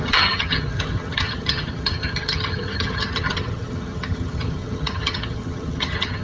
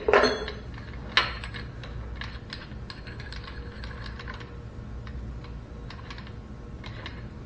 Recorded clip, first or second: second